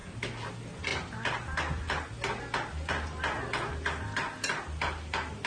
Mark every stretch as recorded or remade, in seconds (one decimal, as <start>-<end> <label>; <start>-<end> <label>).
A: 0.0-5.5 recorded